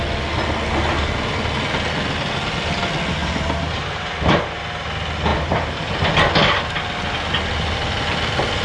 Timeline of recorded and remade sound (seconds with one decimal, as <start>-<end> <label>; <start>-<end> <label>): 0.0-3.2 recorded; 3.2-4.6 remade; 4.6-5.3 recorded; 5.3-5.9 remade; 5.9-8.6 recorded